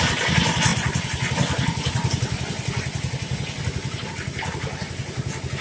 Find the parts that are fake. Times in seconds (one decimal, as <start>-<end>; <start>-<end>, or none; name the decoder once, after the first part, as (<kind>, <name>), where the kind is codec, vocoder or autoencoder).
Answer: none